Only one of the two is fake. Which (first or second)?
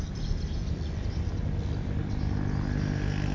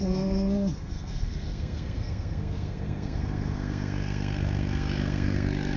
second